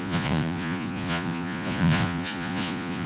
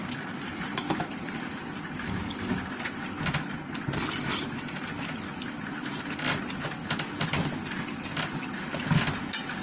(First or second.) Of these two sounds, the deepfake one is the first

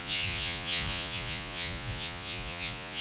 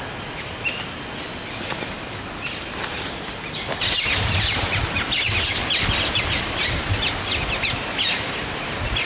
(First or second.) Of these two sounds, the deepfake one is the first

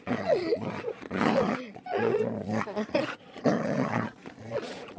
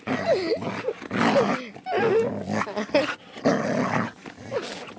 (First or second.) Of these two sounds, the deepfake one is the first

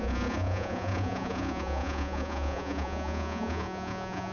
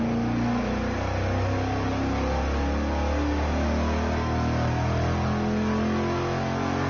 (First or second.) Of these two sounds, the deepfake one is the first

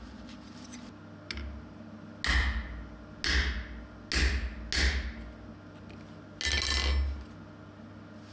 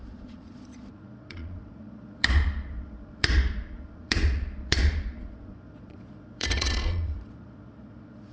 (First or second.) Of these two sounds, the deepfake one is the second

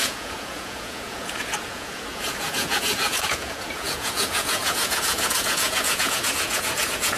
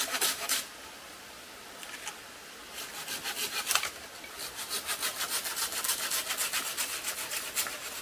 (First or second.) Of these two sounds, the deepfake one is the first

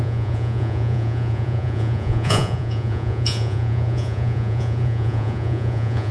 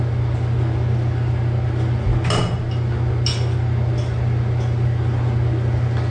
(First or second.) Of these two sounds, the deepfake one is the first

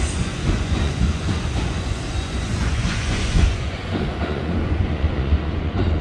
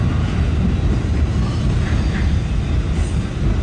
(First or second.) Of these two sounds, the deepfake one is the first